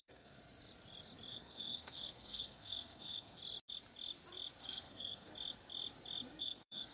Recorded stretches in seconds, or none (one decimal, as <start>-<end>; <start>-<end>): 0.4-1.3; 3.4-4.6; 5.3-6.4